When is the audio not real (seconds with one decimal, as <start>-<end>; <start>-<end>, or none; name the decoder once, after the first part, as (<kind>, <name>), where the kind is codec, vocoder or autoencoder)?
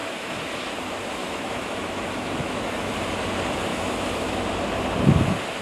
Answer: 0.0-0.5 (autoencoder, DAC-VAE); 1.2-2.9; 3.7-4.4